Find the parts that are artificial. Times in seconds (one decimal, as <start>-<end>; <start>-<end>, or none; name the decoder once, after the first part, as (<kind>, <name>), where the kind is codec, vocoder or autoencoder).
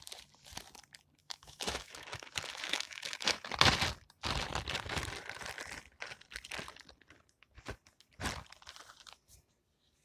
1.2-3.5 (autoencoder, DAC-VAE)